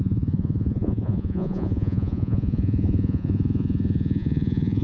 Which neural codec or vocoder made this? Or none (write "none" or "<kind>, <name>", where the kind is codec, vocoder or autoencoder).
vocoder, Vocos